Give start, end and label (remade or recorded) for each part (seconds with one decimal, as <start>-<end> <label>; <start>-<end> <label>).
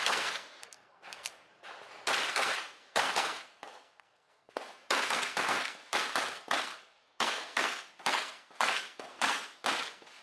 0.0-1.4 remade; 1.4-2.3 recorded; 2.3-10.2 remade